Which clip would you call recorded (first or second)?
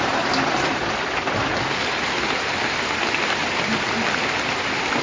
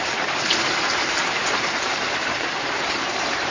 first